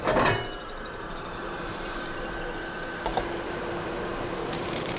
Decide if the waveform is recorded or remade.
remade